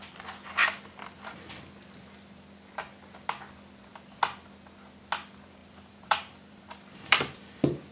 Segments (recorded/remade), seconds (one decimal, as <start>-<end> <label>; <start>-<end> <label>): 0.0-0.6 recorded; 0.6-1.6 remade; 1.6-5.6 recorded; 5.6-7.9 remade